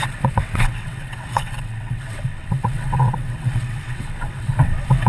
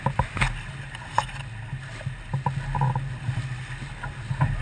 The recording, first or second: second